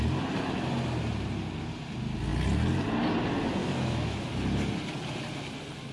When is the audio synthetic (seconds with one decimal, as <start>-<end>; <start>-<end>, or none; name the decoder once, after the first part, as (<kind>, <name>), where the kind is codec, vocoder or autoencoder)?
3.6-4.3 (autoencoder, DAC-VAE)